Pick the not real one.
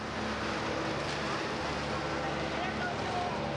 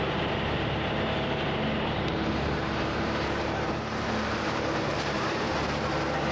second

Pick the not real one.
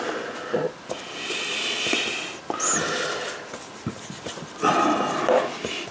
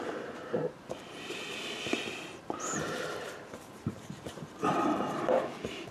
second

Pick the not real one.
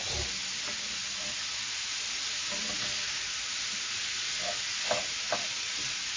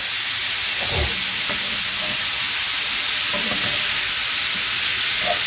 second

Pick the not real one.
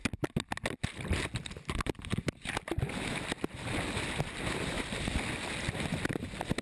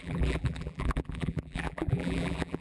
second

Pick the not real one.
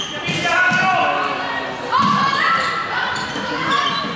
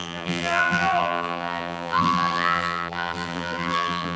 second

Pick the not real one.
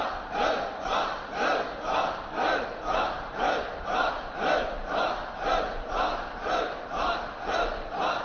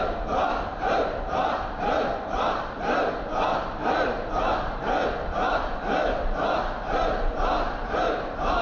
second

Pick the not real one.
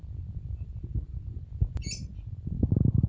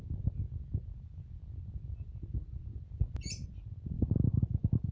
first